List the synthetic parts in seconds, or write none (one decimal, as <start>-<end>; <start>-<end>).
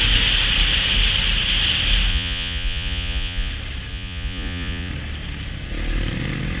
2.1-3.5; 3.9-4.9